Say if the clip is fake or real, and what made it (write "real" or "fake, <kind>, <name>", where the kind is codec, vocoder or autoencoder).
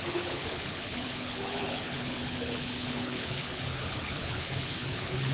fake, codec, HILCodec